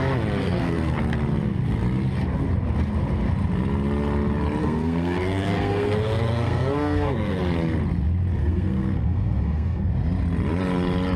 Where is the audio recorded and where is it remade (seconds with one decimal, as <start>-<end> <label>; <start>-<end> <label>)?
0.0-0.4 recorded; 0.4-1.0 remade; 1.0-4.6 recorded; 4.6-7.4 remade; 7.4-8.4 recorded; 8.4-9.9 remade; 9.9-11.2 recorded